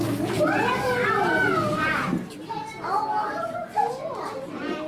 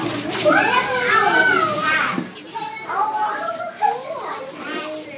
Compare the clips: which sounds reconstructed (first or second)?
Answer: second